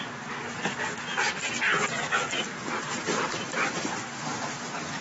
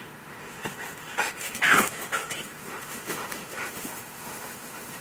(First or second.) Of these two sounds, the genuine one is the first